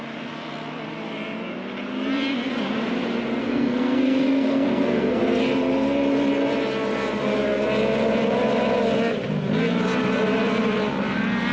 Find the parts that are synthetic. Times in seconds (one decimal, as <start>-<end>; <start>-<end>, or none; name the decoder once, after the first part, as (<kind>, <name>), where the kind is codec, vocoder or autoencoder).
3.4-5.4 (codec, SNAC)